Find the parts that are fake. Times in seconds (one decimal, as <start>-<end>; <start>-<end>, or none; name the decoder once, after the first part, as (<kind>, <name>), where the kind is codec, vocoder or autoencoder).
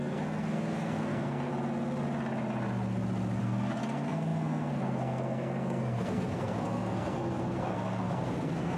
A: 0.0-1.5 (codec, SNAC); 3.4-8.8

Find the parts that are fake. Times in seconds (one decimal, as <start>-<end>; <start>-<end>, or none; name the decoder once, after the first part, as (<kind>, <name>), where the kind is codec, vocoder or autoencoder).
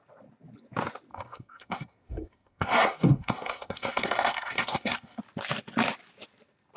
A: 1.1-5.2 (codec, SNAC)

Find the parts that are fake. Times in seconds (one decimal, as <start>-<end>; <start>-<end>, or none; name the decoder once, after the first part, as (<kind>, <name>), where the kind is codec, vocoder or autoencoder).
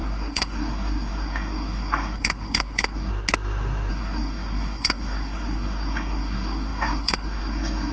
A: 0.0-3.1 (codec, SNAC); 3.9-7.9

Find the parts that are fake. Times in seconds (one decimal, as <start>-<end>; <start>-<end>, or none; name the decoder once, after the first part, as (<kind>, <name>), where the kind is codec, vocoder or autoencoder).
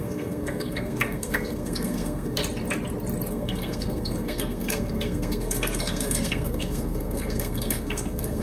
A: 0.0-2.4 (codec, SNAC); 3.3-8.4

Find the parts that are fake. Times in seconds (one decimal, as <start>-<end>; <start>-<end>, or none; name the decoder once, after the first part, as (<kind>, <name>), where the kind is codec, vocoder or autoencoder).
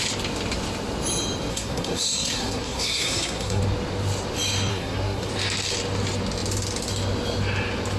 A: 1.5-3.6 (codec, SNAC); 4.7-5.3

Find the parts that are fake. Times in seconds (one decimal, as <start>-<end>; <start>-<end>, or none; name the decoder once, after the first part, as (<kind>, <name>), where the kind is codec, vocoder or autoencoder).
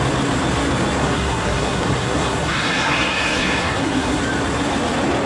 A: 1.0-4.2 (codec, SNAC)